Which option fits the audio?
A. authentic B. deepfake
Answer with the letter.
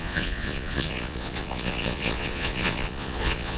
B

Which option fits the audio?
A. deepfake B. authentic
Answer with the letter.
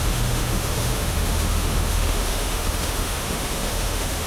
A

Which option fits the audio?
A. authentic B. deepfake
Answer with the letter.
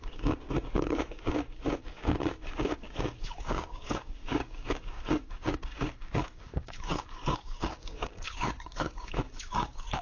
B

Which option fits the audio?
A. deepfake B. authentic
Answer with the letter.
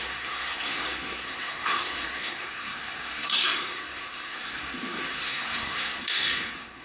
A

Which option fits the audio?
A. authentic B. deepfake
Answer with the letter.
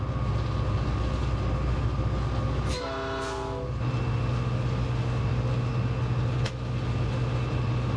A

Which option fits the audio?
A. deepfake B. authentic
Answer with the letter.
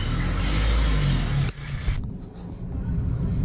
B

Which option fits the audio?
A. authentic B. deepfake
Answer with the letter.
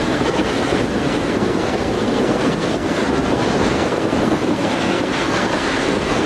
B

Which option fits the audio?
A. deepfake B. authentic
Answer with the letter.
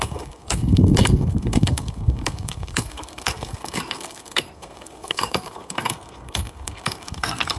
A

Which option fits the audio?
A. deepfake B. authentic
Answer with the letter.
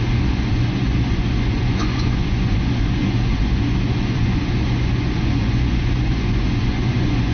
A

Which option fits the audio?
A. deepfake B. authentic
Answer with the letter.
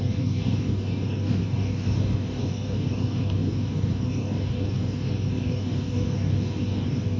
A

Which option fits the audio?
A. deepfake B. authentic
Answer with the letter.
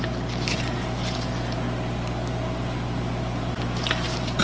B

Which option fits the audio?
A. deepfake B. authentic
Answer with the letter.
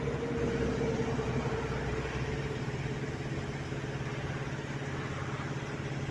B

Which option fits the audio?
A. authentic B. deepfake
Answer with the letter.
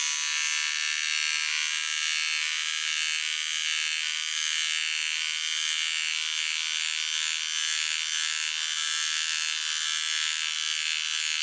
A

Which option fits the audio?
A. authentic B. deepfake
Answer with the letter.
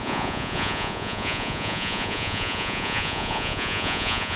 B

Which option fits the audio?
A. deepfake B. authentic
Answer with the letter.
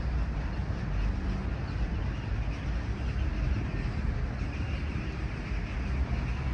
B